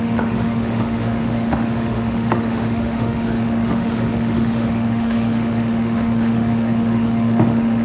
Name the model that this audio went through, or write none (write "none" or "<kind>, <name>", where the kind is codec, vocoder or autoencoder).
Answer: autoencoder, DAC-VAE